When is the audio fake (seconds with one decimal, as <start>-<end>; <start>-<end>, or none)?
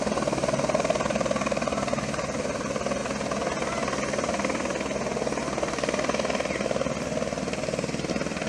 0.0-0.4; 1.1-3.0; 8.1-8.5